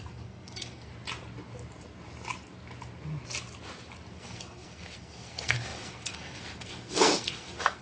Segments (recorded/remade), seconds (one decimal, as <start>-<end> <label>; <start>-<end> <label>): 0.0-0.9 remade; 0.9-4.1 recorded; 4.1-7.8 remade